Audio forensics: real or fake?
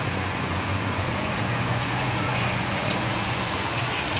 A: fake